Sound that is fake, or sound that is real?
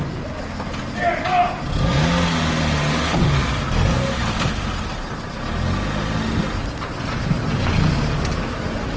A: real